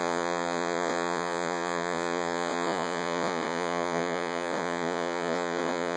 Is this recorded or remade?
remade